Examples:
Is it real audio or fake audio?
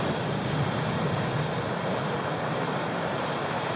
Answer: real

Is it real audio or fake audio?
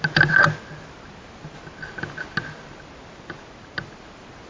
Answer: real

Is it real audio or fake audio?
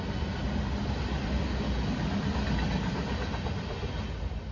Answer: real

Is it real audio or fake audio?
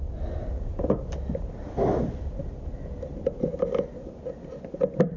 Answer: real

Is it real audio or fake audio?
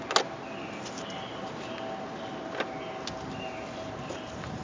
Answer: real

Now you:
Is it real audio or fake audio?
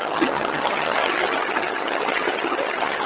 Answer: fake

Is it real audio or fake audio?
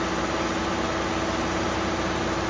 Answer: real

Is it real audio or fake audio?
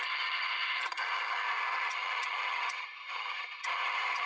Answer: fake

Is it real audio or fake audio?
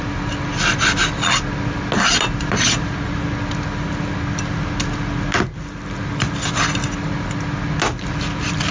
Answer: real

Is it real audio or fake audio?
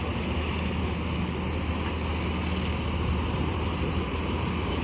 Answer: real